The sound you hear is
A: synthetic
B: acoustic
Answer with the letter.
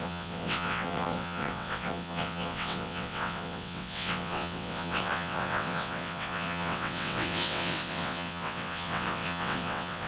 A